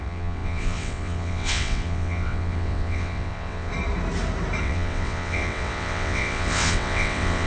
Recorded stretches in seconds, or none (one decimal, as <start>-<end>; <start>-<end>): 3.7-4.6